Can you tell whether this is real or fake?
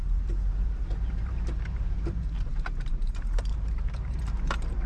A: fake